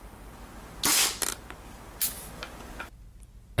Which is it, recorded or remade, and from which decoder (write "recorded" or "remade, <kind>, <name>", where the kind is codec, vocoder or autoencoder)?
recorded